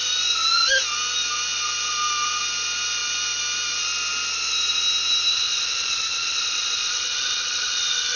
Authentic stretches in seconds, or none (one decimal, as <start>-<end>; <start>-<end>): 0.0-5.3